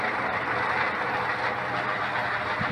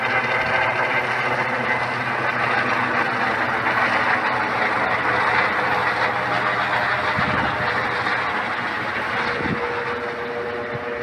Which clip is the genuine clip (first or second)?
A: second